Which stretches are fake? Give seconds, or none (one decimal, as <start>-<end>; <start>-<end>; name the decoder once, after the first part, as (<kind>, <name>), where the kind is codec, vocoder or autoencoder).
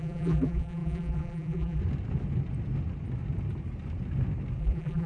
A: 0.0-1.8 (vocoder, BigVGAN v2); 4.6-5.1